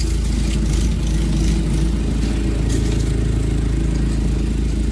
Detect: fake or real real